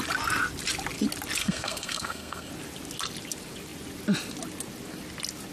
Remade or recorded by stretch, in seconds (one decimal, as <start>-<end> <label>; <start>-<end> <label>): 0.0-1.4 recorded; 1.4-2.5 remade; 2.5-5.5 recorded